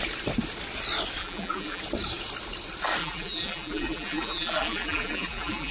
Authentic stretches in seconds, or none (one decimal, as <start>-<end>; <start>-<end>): 0.0-1.2; 1.8-3.0